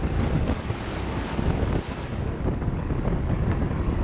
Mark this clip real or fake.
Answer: fake